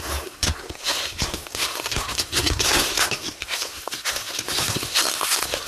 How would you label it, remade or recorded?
remade